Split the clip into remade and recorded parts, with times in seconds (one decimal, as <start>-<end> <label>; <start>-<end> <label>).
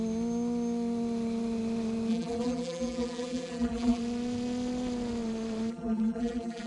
0.0-2.1 recorded; 2.1-4.0 remade; 4.0-5.7 recorded; 5.7-6.7 remade